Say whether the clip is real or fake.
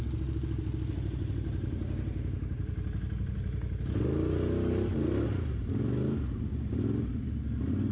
real